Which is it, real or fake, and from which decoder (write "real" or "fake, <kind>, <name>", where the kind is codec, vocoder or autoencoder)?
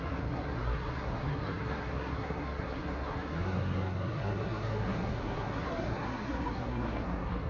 fake, codec, SNAC